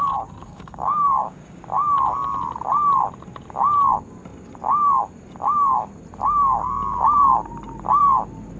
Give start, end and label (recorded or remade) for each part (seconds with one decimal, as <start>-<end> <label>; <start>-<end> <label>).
0.0-0.4 recorded; 0.4-1.6 remade; 1.6-8.6 recorded